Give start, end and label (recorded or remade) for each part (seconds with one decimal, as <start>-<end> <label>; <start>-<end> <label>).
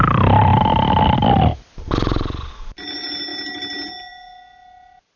0.0-5.2 recorded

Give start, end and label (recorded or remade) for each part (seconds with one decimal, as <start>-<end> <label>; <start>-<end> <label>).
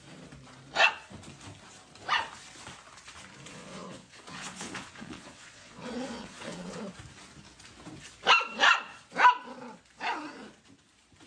0.0-3.5 recorded; 3.5-6.8 remade; 6.8-11.3 recorded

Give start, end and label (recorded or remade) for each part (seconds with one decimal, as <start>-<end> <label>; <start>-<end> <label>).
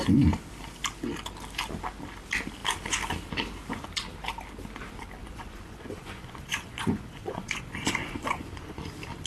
0.0-5.2 recorded; 5.2-8.8 remade; 8.8-9.3 recorded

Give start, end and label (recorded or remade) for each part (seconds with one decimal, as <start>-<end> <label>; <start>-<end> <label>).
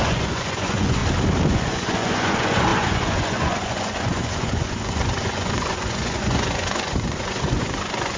0.0-1.0 remade; 1.0-1.5 recorded; 1.5-8.2 remade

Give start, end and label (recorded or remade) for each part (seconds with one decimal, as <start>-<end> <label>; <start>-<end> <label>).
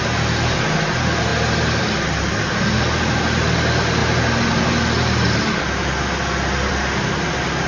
0.0-7.7 recorded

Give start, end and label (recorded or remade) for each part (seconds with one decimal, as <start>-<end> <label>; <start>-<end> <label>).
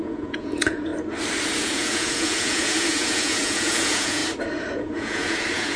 0.0-0.9 remade; 0.9-1.6 recorded; 1.6-4.2 remade; 4.2-4.7 recorded; 4.7-5.8 remade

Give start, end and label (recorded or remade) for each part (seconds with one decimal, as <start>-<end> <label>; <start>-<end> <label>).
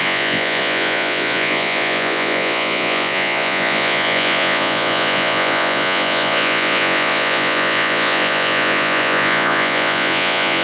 0.0-10.6 remade